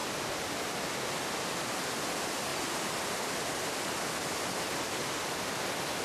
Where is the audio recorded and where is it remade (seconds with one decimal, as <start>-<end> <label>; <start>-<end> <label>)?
0.0-6.0 recorded